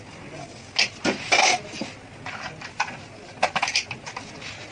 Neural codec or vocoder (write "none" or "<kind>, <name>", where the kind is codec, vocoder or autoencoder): none